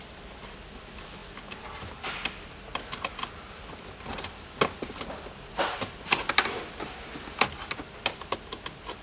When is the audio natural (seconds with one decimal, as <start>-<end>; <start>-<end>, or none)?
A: 0.0-4.1; 5.0-9.0